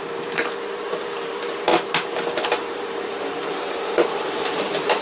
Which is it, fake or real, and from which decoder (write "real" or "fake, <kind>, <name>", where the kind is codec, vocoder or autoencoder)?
fake, vocoder, BigVGAN v2